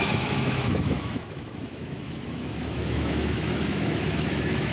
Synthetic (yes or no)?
yes